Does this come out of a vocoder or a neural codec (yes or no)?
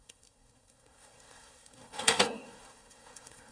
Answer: yes